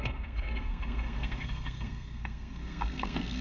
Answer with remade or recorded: remade